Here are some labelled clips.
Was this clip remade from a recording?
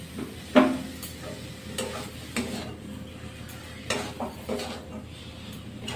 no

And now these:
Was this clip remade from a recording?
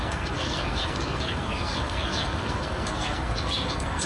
yes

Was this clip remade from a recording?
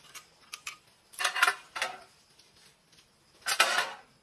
no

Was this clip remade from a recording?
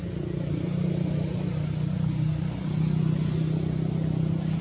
no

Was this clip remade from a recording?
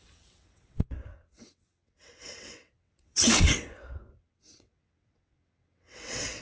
yes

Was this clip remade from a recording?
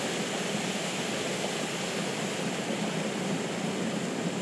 no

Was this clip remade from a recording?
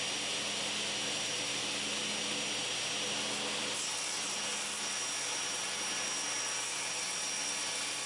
no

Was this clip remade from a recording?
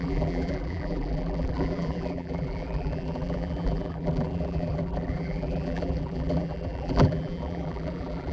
yes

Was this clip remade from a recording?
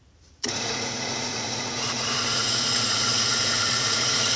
yes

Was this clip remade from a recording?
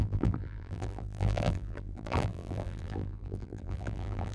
yes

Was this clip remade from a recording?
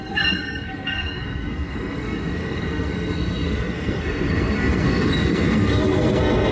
yes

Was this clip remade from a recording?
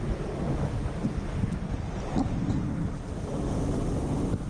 no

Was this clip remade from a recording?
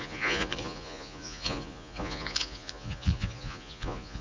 yes